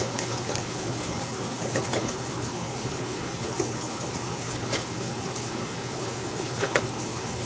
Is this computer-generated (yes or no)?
yes